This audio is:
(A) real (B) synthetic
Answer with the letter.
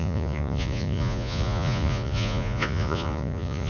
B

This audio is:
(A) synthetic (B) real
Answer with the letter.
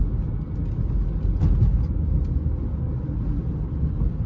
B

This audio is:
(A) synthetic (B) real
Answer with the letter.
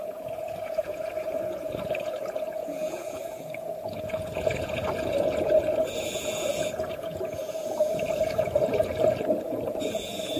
A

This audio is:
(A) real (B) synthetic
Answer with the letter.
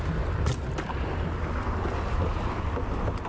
A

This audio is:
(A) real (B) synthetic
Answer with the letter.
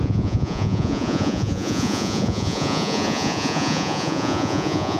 B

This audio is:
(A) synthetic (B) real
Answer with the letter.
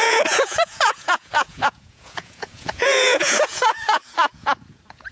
A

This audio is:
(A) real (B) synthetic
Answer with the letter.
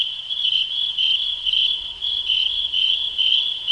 B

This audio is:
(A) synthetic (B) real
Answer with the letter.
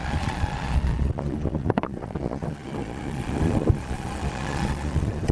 A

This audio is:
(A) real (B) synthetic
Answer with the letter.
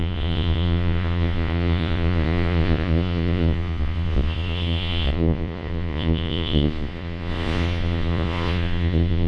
B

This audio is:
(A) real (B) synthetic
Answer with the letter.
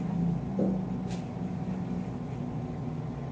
A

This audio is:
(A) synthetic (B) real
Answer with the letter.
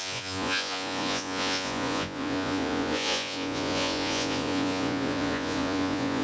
A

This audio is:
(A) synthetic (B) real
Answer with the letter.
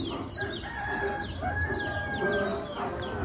B